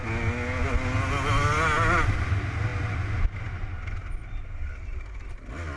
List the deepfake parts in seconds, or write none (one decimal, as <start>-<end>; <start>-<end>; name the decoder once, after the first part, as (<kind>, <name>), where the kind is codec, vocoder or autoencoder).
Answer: none